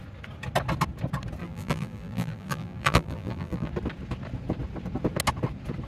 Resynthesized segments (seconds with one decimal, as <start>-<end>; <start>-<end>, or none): 1.4-3.7